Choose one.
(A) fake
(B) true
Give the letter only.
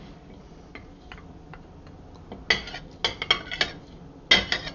B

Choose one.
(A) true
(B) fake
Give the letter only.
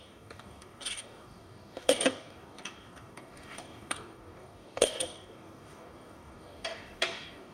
B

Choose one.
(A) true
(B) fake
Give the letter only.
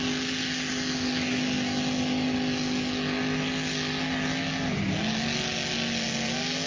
A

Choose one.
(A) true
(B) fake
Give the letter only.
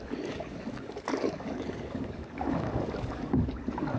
B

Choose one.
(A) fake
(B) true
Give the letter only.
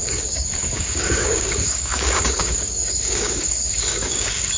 A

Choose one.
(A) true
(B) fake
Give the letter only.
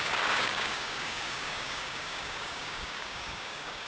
B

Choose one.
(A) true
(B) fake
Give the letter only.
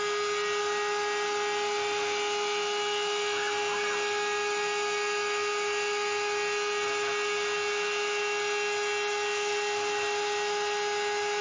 A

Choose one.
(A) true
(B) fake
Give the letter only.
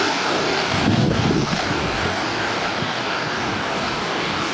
B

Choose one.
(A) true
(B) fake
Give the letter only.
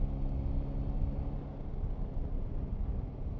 A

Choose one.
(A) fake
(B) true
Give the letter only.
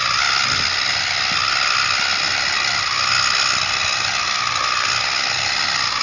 B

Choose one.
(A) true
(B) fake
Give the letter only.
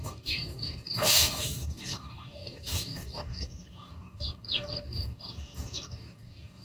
B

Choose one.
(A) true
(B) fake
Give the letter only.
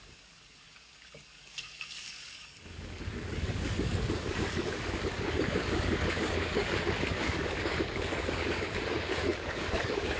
B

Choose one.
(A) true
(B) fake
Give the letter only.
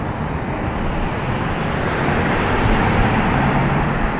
A